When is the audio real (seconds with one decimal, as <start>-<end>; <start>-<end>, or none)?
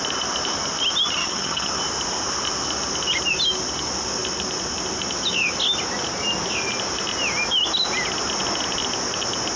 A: 0.0-1.2; 1.7-9.6